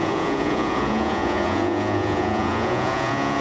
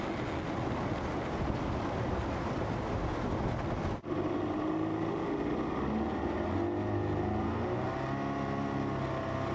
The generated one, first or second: first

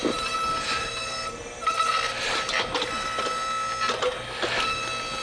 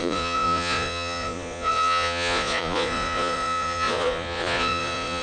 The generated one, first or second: second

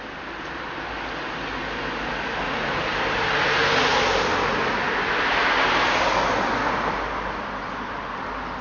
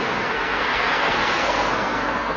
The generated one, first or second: second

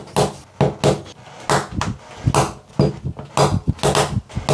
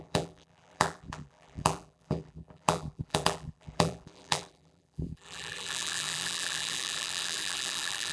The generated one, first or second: second